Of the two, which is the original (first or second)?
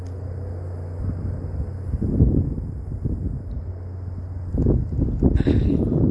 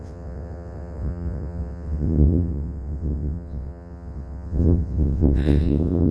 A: first